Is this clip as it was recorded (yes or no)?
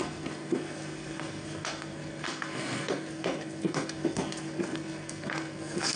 no